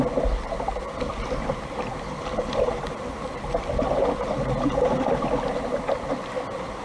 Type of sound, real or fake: real